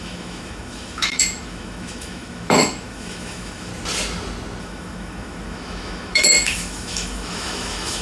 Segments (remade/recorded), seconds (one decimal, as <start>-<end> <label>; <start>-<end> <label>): 0.0-3.7 remade; 3.7-4.6 recorded; 4.6-8.0 remade